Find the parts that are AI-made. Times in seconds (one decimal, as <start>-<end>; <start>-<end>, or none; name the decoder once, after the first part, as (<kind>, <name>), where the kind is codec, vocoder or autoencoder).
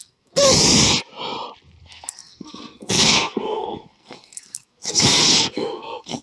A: 0.0-0.4 (codec, SNAC); 1.8-6.2